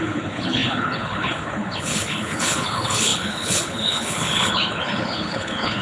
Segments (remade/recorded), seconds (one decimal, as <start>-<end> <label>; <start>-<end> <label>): 0.0-5.8 remade